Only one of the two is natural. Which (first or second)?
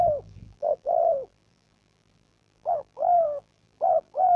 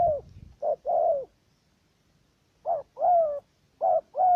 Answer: second